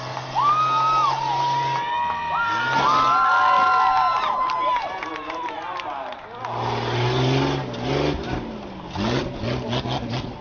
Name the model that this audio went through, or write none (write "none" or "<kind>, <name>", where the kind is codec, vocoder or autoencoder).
none